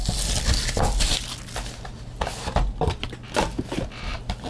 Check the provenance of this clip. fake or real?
real